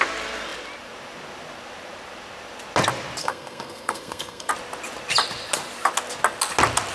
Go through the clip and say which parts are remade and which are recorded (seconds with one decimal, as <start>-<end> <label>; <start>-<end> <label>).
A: 0.0-3.2 recorded; 3.2-4.5 remade; 4.5-6.9 recorded